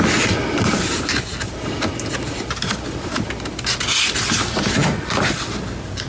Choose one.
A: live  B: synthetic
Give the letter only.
A